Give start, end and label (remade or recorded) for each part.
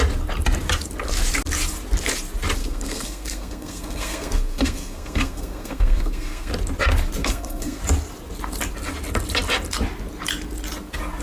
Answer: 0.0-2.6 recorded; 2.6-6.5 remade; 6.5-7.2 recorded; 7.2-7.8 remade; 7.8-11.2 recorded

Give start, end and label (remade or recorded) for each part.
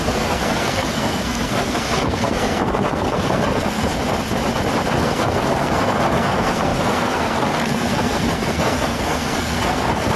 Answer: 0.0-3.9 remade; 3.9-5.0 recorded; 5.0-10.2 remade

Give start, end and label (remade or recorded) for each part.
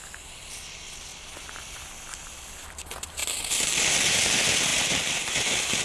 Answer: 0.0-5.8 recorded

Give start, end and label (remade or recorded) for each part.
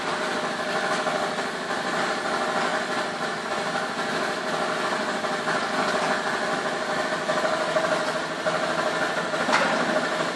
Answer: 0.0-10.4 recorded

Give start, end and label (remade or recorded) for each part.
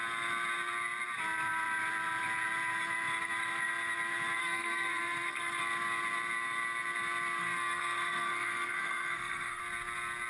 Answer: 0.0-4.4 recorded; 4.4-5.6 remade; 5.6-7.4 recorded; 7.4-9.6 remade; 9.6-10.3 recorded